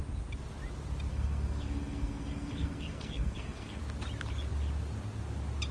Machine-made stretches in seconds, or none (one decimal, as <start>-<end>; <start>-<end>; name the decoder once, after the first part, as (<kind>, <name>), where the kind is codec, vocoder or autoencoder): 1.1-3.8 (codec, SNAC)